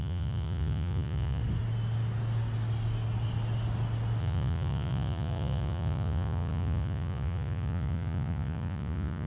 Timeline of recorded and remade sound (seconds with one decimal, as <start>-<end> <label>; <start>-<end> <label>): 0.0-1.4 remade; 1.4-4.2 recorded; 4.2-9.3 remade